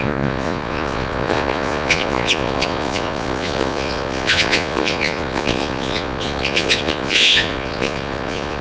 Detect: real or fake fake